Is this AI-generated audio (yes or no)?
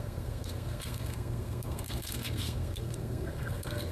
yes